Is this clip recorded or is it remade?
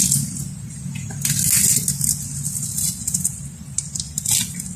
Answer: recorded